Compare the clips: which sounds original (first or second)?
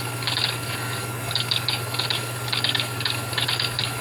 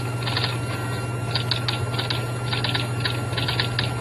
second